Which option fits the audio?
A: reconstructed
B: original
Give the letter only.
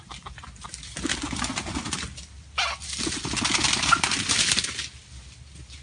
B